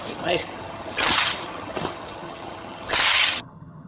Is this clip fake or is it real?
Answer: fake